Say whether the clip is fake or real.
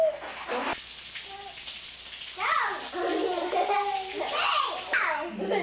real